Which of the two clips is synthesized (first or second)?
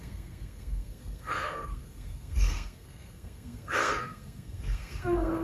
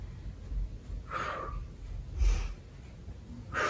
first